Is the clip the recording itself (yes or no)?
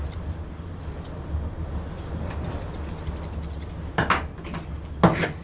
yes